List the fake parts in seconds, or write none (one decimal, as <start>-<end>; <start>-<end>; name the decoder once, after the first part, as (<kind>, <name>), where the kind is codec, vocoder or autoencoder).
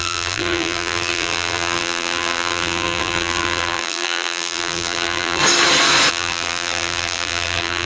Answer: 0.0-5.4 (vocoder, BigVGAN v2); 6.1-7.9